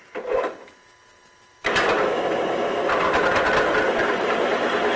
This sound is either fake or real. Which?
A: real